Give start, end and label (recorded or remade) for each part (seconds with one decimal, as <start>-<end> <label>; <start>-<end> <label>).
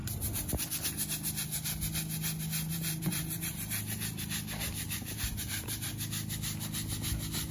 0.0-0.5 remade; 0.5-2.7 recorded; 2.7-5.9 remade; 5.9-7.5 recorded